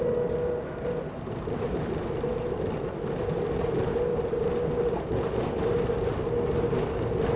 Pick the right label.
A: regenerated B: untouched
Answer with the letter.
B